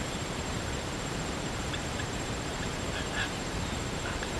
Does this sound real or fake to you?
fake